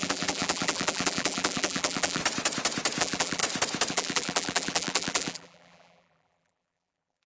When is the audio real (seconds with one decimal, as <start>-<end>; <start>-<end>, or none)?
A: 2.2-3.0; 3.4-3.9